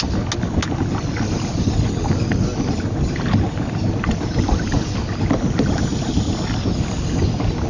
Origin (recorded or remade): recorded